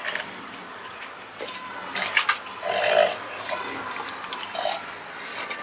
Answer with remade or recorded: recorded